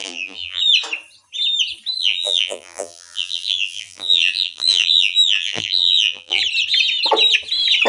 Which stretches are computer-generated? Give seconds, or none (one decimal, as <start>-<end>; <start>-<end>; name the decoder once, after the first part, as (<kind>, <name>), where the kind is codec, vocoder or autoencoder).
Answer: 0.0-0.6 (vocoder, BigVGAN v2); 2.0-6.4